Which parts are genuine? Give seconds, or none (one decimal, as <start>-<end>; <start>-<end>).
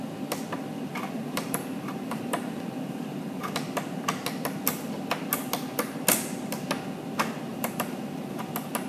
0.0-0.9; 3.5-7.5; 8.5-8.9